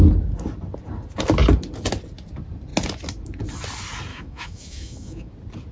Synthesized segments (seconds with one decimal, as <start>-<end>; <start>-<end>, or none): 4.1-5.3